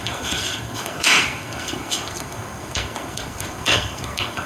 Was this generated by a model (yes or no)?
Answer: yes